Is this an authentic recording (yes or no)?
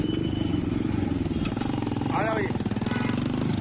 yes